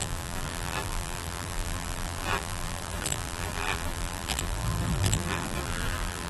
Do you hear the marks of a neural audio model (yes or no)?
yes